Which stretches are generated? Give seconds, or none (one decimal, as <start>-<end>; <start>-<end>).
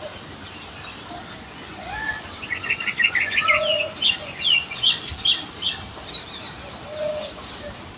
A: 1.2-5.1; 6.9-7.5